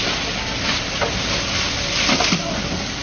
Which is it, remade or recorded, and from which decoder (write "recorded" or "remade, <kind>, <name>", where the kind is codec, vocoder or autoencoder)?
recorded